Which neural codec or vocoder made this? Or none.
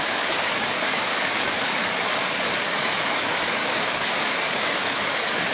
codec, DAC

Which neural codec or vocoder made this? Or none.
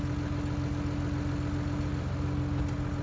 none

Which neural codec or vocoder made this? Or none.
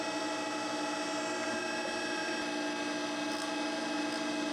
none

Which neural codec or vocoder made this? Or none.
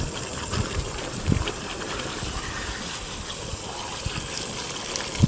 none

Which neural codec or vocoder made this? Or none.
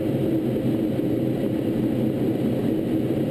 none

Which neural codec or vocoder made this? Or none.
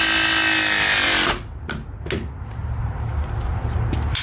none